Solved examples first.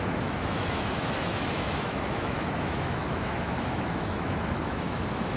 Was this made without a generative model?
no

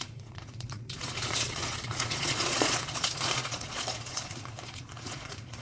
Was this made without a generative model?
no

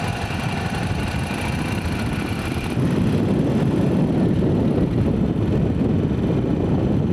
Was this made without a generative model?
yes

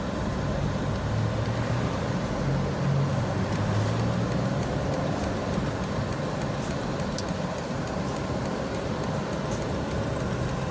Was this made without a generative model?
yes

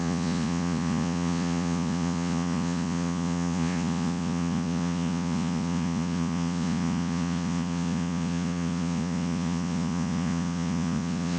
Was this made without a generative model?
no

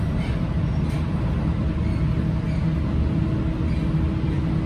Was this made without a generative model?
yes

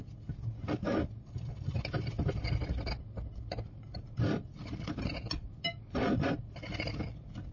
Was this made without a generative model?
yes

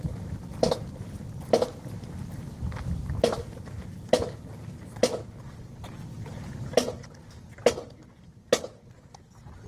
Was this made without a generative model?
yes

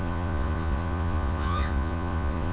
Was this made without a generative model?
no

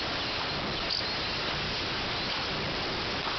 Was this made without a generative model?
yes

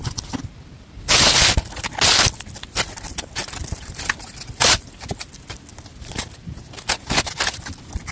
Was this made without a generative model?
yes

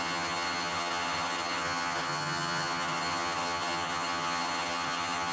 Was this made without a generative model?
no